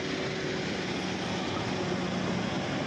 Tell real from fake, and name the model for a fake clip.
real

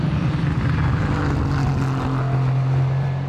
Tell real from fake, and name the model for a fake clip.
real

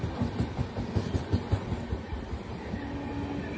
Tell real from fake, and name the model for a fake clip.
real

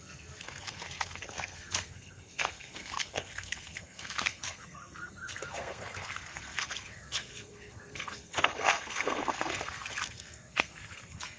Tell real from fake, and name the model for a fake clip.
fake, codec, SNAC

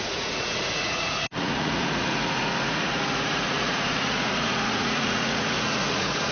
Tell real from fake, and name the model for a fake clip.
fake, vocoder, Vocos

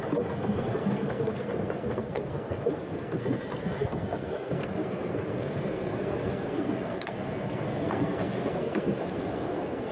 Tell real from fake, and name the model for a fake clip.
fake, codec, SNAC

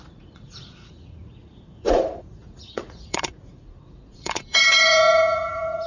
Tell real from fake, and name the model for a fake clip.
fake, vocoder, Vocos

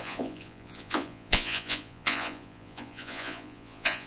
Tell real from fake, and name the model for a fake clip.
fake, vocoder, Vocos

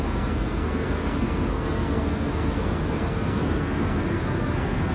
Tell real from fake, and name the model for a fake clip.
fake, codec, SNAC